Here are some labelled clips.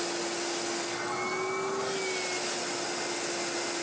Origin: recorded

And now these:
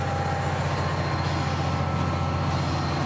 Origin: recorded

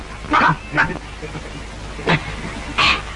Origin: recorded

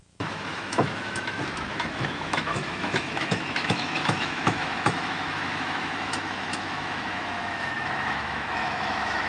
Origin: remade